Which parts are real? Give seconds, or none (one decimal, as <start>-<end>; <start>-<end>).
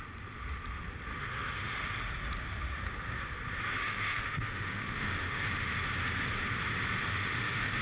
0.0-1.1; 1.8-3.8; 5.8-7.1